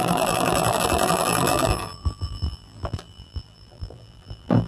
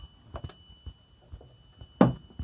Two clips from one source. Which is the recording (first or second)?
second